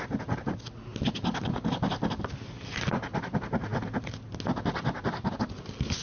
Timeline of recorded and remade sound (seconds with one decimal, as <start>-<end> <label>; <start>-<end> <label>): 0.0-6.0 recorded